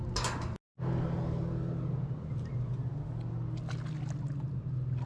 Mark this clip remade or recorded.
recorded